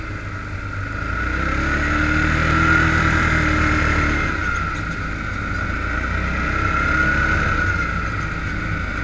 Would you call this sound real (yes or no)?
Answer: yes